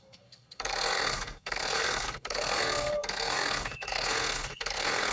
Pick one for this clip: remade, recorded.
remade